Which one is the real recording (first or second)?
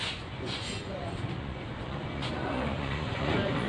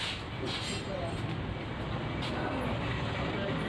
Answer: second